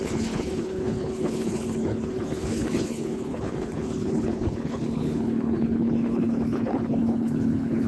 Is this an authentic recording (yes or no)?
no